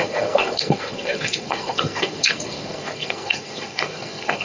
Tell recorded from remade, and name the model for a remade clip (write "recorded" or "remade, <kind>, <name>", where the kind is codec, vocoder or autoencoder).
remade, codec, SNAC